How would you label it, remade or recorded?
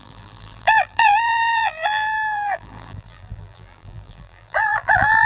remade